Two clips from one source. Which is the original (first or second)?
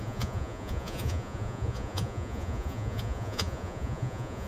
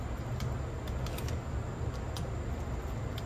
second